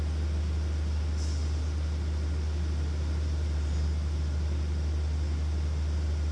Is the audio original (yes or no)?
yes